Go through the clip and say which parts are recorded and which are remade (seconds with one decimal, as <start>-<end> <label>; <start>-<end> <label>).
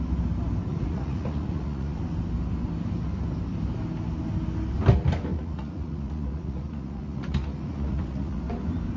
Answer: 0.0-0.7 recorded; 0.7-2.0 remade; 2.0-5.3 recorded; 5.3-8.4 remade; 8.4-9.0 recorded